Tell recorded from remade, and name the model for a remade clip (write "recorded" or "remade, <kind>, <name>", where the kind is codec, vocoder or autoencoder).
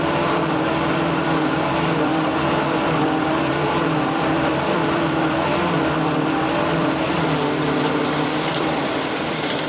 remade, vocoder, BigVGAN v2